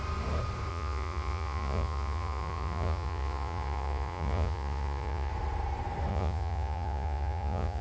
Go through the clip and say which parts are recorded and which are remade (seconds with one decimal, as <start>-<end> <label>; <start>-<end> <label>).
0.0-0.7 recorded; 0.7-5.3 remade; 5.3-6.1 recorded; 6.1-7.8 remade